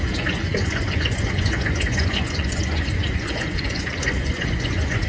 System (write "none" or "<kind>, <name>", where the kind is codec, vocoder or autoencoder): vocoder, Vocos